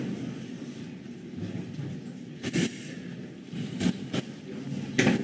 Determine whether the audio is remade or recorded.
recorded